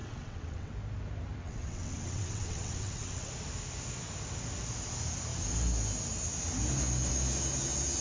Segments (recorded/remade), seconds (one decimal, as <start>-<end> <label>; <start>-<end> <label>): 0.0-0.7 remade; 0.7-1.4 recorded; 1.4-3.3 remade; 3.3-8.0 recorded